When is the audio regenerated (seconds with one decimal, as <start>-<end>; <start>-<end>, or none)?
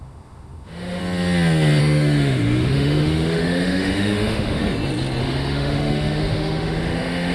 0.0-1.0; 1.8-4.6; 5.2-7.3